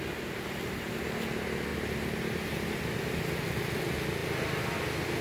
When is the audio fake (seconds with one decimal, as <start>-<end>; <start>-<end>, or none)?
1.7-2.5